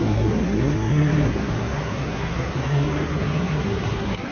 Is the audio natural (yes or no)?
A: no